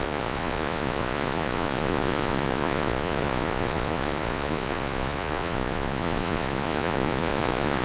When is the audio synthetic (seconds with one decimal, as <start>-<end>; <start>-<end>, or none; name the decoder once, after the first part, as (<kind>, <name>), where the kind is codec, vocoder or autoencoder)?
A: 0.0-7.8 (vocoder, Vocos)